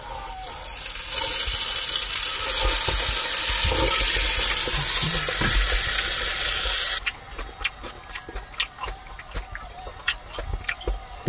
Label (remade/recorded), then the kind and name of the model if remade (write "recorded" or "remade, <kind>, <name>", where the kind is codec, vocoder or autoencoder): recorded